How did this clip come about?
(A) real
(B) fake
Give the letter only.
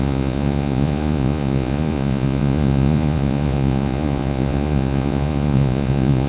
B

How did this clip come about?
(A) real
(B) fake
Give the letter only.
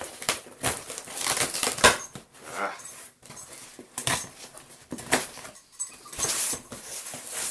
B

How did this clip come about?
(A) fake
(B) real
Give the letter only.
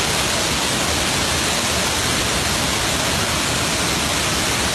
B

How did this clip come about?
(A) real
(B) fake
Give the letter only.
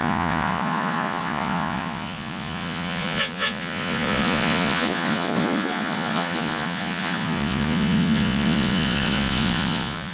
B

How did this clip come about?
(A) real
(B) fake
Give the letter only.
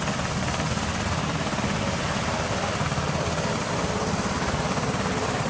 A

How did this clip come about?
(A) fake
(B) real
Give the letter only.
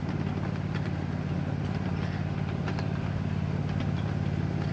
B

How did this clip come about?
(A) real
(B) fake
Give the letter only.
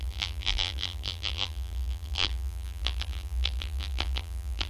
B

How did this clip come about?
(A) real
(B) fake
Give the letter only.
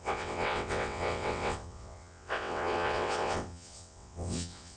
B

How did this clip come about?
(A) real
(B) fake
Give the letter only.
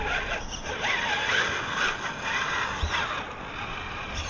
A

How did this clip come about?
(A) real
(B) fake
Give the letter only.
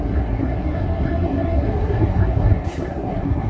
B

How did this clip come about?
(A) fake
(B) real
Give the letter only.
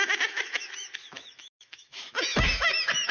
A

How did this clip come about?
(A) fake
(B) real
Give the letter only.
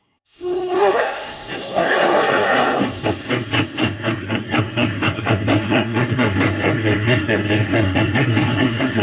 A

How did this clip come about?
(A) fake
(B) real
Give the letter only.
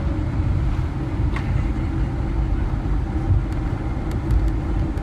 B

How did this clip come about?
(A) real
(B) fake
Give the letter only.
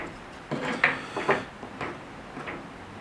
A